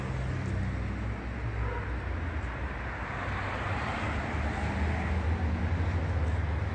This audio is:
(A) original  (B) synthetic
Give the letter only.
A